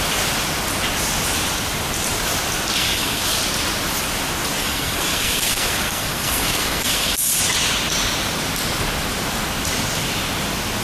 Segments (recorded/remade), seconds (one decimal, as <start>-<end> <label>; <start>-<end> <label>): 0.0-2.8 recorded; 2.8-3.4 remade; 3.4-4.6 recorded; 4.6-7.4 remade; 7.4-10.8 recorded